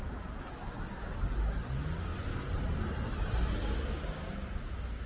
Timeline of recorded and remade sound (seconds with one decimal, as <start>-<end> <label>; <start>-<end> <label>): 0.0-5.1 recorded